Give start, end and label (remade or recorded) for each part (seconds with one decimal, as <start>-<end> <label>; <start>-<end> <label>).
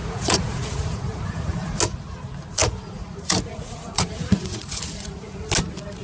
0.0-1.8 remade; 1.8-2.6 recorded; 2.6-5.4 remade; 5.4-6.0 recorded